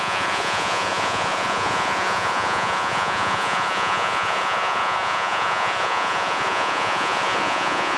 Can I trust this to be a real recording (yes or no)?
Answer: no